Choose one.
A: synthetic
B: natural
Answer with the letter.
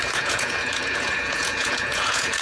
A